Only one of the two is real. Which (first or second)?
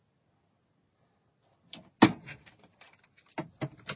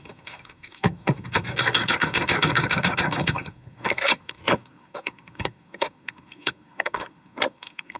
first